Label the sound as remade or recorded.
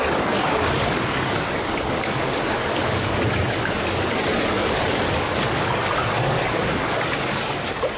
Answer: remade